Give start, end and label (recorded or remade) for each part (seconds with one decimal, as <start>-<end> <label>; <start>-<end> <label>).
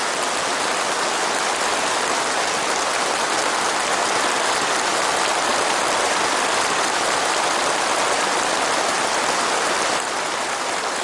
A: 0.0-5.5 recorded; 5.5-8.0 remade; 8.0-11.0 recorded